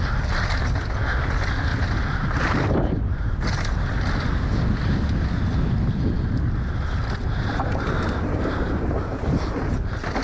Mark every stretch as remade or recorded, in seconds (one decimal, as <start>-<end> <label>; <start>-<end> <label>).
0.0-1.7 recorded; 1.7-3.8 remade; 3.8-7.2 recorded; 7.2-9.2 remade; 9.2-10.2 recorded